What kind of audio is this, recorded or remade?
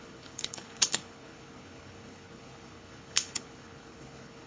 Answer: remade